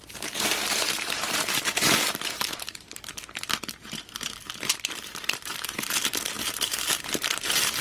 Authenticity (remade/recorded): remade